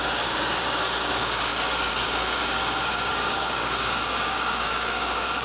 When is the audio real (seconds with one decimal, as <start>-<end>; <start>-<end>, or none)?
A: none